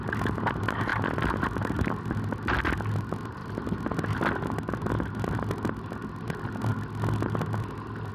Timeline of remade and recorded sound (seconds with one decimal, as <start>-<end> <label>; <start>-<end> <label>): 0.0-8.1 recorded